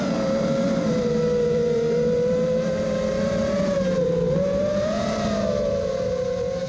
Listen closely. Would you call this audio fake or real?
fake